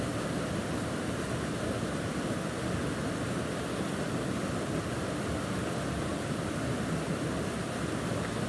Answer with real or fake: real